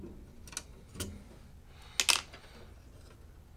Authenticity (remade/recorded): recorded